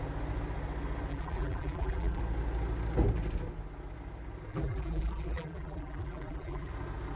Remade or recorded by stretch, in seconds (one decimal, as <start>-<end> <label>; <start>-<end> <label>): 0.0-1.1 recorded; 1.1-2.2 remade; 2.2-4.5 recorded; 4.5-6.7 remade; 6.7-7.2 recorded